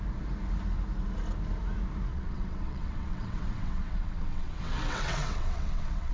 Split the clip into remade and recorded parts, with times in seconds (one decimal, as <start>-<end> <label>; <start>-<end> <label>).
0.0-2.1 recorded; 2.1-6.1 remade